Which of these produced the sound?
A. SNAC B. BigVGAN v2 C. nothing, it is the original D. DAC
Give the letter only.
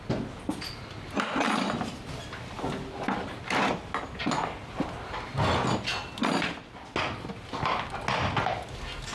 C